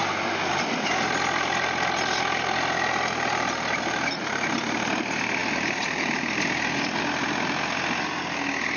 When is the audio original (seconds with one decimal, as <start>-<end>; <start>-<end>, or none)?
0.0-8.8